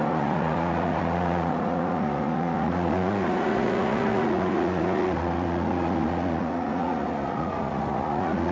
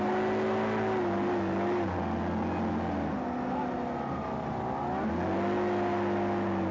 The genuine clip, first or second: second